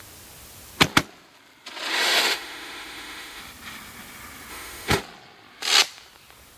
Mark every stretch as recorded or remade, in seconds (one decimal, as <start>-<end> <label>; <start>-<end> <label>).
0.0-1.9 recorded; 1.9-3.4 remade; 3.4-4.5 recorded; 4.5-5.0 remade; 5.0-6.6 recorded